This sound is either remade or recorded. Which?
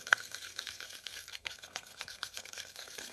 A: remade